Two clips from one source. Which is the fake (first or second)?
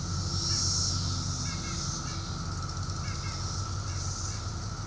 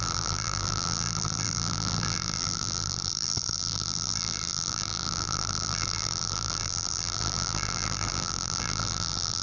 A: second